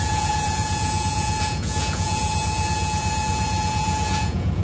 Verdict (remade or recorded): remade